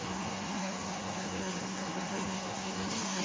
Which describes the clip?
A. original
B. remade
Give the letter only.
B